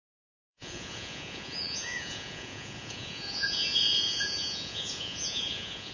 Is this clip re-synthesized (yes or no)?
yes